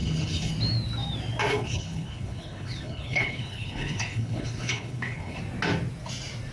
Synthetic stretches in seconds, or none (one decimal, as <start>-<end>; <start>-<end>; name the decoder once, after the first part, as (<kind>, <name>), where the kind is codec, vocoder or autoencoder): 0.0-0.5 (codec, HILCodec); 1.5-5.4